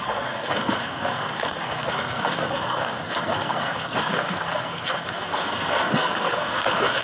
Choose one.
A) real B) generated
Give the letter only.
B